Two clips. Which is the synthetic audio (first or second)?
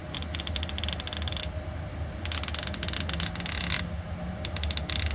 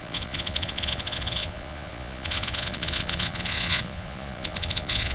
second